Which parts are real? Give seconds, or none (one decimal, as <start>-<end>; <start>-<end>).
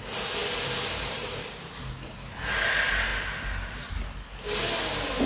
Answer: 0.0-0.4; 1.9-3.1; 3.9-5.3